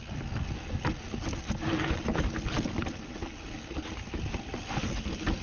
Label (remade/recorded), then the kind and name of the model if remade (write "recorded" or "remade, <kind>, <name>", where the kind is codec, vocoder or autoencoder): recorded